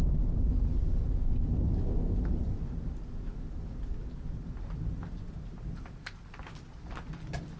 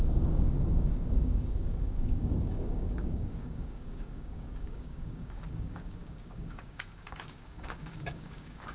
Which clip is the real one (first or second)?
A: first